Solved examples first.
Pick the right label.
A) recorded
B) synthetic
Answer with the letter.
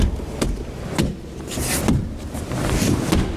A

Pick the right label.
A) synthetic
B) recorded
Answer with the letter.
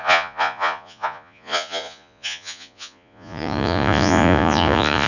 A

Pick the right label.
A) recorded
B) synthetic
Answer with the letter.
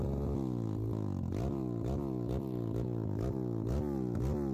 A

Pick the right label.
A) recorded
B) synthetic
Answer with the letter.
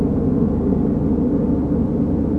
A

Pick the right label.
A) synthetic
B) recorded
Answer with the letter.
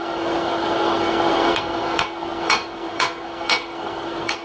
A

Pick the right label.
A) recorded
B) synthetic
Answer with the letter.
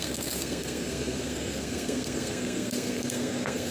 B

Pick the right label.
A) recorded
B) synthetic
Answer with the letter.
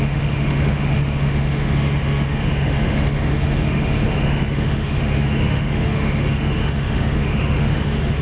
B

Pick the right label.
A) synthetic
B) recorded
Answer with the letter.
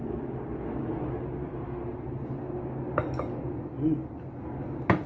B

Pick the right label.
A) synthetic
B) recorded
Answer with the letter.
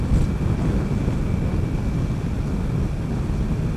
B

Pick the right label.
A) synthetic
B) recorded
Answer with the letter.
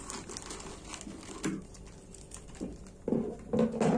B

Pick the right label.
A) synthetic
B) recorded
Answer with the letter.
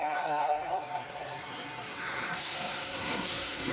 A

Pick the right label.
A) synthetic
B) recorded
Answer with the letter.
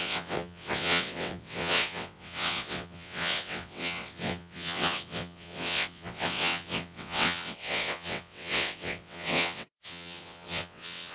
A